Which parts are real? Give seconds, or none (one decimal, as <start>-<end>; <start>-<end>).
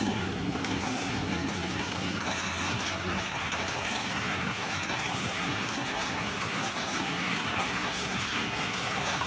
none